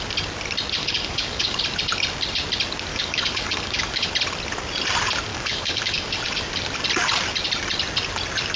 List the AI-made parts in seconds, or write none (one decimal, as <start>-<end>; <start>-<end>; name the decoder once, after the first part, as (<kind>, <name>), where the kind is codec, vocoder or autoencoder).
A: 0.8-1.6 (codec, DAC); 2.9-4.1; 5.3-6.1